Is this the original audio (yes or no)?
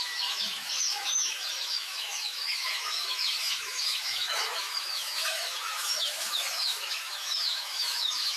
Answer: no